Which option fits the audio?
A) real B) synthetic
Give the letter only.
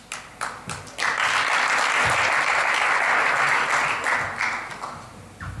A